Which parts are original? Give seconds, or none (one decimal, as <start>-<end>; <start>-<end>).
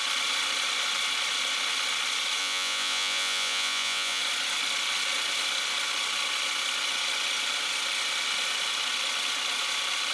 0.0-2.4; 4.2-10.1